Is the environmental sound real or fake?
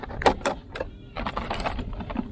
real